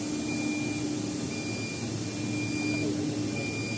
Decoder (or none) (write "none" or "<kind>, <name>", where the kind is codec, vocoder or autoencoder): none